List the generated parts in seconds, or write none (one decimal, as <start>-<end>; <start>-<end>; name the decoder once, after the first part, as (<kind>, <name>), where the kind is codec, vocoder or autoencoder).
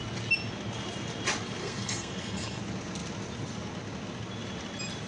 1.6-2.6 (codec, SNAC)